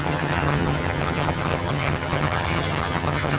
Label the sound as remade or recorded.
remade